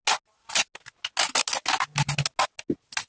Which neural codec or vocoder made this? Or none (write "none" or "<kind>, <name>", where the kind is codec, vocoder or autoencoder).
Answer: none